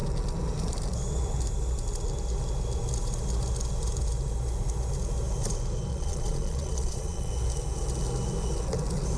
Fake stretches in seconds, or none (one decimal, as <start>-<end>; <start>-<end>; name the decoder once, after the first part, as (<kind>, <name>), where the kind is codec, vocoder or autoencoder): 5.9-7.3 (vocoder, Vocos)